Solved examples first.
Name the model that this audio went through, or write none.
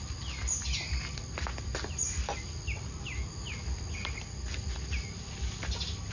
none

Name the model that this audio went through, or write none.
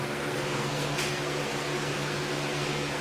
codec, SNAC